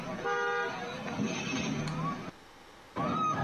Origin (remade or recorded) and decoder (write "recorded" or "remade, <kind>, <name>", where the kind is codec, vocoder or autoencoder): recorded